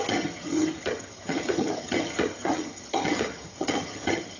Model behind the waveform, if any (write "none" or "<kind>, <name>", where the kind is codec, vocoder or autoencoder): vocoder, HiFi-GAN